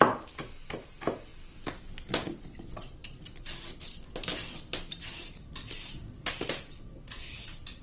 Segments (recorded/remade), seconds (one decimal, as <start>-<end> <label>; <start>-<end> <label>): 0.0-7.8 recorded